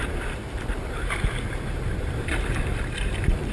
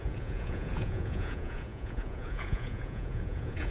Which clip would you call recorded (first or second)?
first